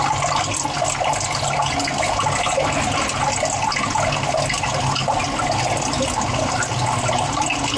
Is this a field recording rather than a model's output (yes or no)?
yes